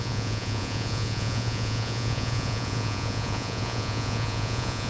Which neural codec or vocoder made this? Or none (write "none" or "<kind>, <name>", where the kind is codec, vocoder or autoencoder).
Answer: vocoder, Vocos